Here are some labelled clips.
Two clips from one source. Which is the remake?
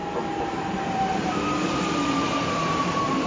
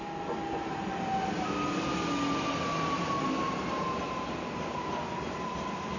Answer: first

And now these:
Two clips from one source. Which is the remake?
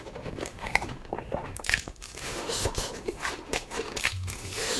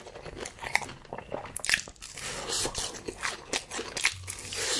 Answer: first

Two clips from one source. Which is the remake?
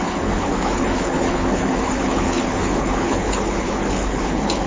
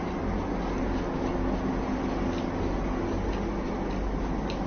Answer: first